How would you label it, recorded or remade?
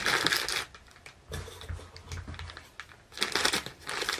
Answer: recorded